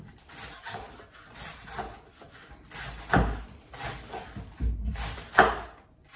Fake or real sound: real